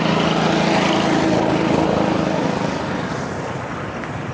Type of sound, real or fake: real